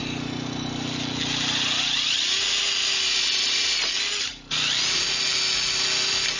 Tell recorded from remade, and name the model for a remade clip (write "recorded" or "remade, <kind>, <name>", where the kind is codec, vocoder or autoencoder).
recorded